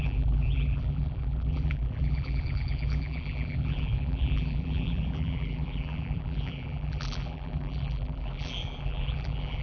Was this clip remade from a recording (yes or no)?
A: yes